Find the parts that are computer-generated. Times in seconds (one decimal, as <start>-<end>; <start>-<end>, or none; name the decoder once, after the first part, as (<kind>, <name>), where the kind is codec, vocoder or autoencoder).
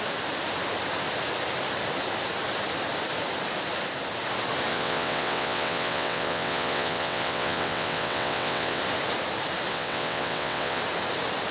4.7-8.8 (vocoder, WaveNeXt); 9.7-10.8